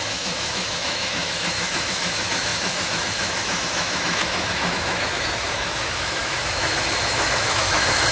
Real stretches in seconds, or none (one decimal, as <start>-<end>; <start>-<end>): none